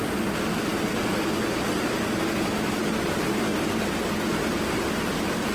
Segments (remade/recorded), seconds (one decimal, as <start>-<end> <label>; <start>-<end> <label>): 0.0-5.5 recorded